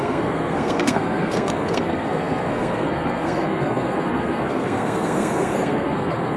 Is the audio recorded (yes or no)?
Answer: no